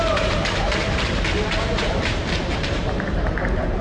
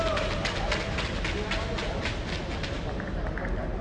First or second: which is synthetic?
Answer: first